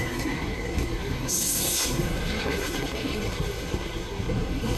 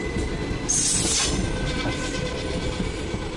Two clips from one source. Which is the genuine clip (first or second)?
second